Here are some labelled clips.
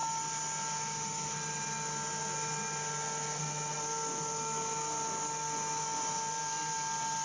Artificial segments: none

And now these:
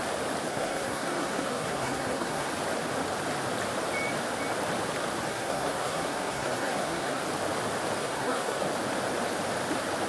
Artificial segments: 0.5-2.5 (codec, SNAC); 5.3-7.2; 8.0-8.6

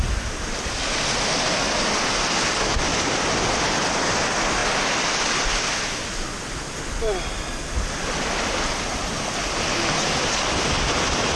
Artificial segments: none

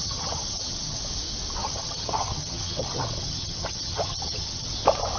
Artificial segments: 0.0-1.0 (vocoder, HiFi-GAN); 1.6-4.7

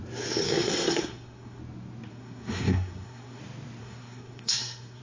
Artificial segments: 0.4-1.6 (codec, SNAC); 2.1-3.4; 3.8-5.0

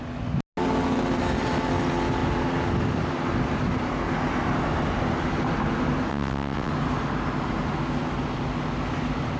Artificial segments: 6.1-6.7 (vocoder, WaveNeXt)